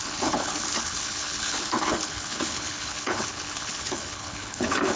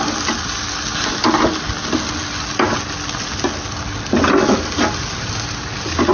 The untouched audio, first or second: second